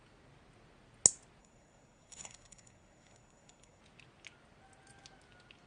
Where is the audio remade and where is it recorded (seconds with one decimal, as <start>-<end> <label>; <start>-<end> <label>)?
0.0-1.4 recorded; 1.4-3.8 remade; 3.8-5.7 recorded